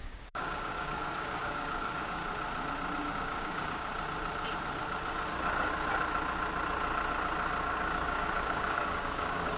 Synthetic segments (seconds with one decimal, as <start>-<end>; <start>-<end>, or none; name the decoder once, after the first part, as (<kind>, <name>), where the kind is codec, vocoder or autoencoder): 0.0-2.2 (codec, DAC); 3.1-3.9; 7.6-9.6